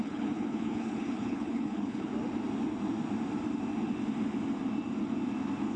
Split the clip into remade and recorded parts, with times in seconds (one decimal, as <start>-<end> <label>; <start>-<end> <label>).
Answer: 0.0-2.1 remade; 2.1-5.8 recorded